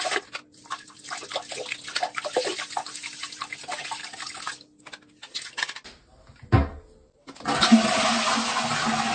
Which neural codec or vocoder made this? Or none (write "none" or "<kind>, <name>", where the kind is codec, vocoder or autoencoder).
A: none